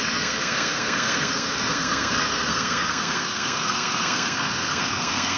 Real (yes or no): no